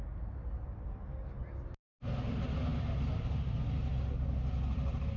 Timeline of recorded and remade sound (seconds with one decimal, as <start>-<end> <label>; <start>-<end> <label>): 0.0-5.2 recorded

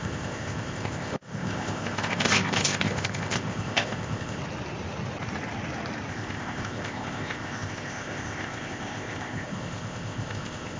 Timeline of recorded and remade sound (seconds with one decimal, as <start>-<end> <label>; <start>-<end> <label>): 0.0-4.4 remade; 4.4-6.1 recorded; 6.1-10.8 remade

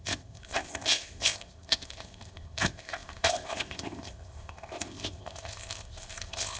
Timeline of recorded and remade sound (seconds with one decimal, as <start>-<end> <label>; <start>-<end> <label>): 0.0-6.6 remade

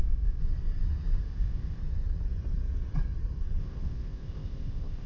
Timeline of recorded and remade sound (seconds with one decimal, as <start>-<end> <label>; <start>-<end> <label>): 0.0-0.4 remade; 0.4-1.2 recorded; 1.2-1.8 remade; 1.8-3.6 recorded; 3.6-5.1 remade

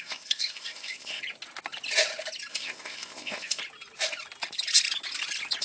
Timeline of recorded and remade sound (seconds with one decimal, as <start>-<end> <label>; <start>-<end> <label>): 0.0-1.2 remade; 1.2-2.5 recorded; 2.5-3.6 remade; 3.6-5.6 recorded

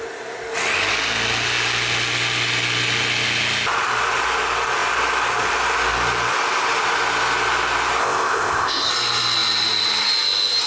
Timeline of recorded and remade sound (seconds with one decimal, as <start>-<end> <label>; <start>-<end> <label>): 0.0-8.0 recorded; 8.0-8.9 remade; 8.9-10.7 recorded